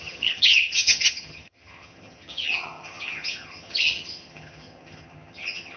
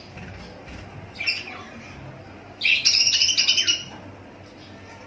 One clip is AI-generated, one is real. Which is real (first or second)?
second